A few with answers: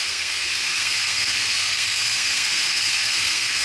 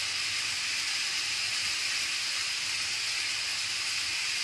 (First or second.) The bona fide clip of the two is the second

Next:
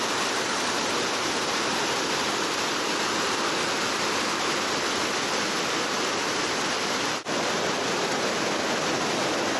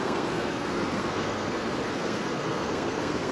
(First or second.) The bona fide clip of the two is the first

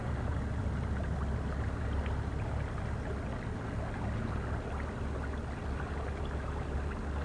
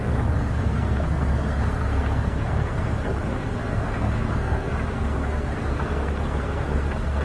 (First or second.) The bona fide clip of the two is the first